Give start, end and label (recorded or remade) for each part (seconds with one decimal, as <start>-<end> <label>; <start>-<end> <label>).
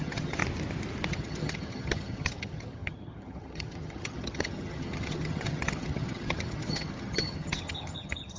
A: 0.0-0.4 remade; 0.4-1.1 recorded; 1.1-8.4 remade